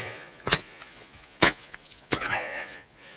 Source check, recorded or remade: remade